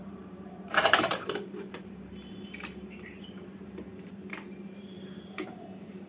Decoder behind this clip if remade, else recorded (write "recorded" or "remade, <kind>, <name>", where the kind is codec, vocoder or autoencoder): remade, vocoder, BigVGAN v2